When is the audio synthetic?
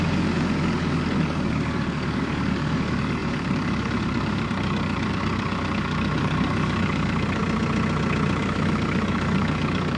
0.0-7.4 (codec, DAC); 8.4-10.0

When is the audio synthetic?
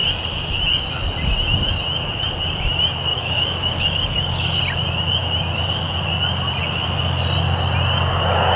3.1-4.6 (codec, DAC)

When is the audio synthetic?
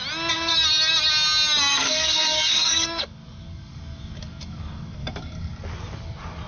1.7-5.6 (codec, DAC)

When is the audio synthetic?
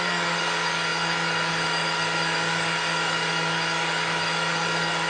0.0-5.1 (codec, DAC)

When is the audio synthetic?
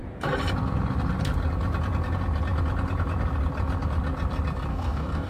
4.7-5.3 (codec, DAC)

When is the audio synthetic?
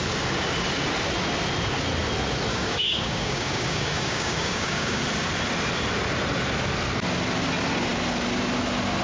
2.5-5.0 (codec, DAC)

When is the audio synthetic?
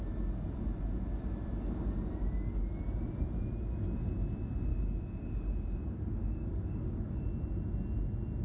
4.7-5.8 (codec, DAC); 6.2-7.2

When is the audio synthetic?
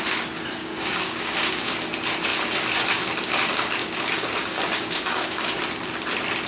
0.6-1.7 (codec, DAC); 3.8-5.6